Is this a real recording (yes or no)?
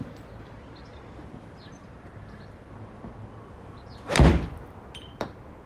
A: yes